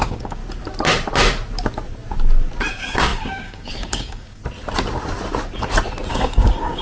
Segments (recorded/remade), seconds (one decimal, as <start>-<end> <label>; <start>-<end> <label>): 0.0-0.4 remade; 0.4-2.7 recorded; 2.7-4.4 remade; 4.4-6.1 recorded; 6.1-6.8 remade